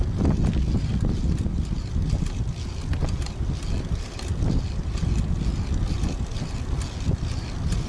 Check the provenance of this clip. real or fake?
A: real